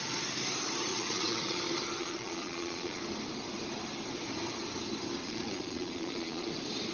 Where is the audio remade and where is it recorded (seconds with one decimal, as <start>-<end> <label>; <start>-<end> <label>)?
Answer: 0.0-0.9 recorded; 0.9-1.6 remade; 1.6-2.0 recorded; 2.0-3.0 remade; 3.0-5.2 recorded; 5.2-6.5 remade; 6.5-6.9 recorded